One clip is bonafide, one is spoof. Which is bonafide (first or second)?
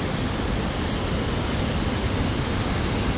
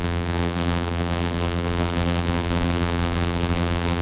first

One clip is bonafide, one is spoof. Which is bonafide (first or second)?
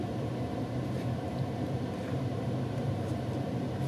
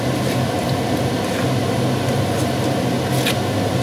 second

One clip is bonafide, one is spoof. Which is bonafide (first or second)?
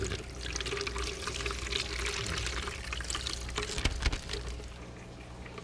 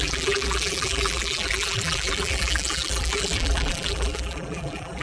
first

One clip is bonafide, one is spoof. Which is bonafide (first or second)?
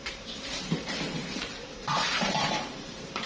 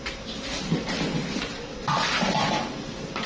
second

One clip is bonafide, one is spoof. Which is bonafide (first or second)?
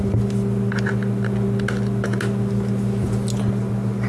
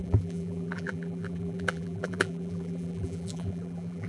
first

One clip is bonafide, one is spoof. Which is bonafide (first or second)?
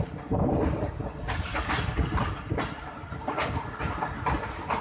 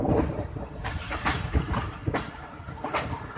first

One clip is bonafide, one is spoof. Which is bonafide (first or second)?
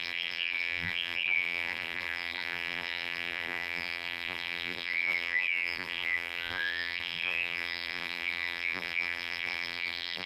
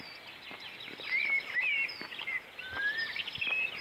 second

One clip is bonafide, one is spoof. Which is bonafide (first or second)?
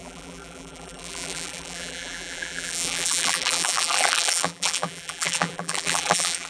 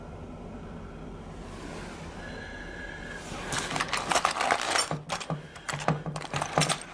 second